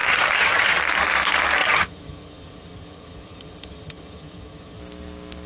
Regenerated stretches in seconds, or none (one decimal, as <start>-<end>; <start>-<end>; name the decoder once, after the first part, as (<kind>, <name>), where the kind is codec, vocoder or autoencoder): 0.0-0.8 (vocoder, HiFi-GAN); 1.6-4.8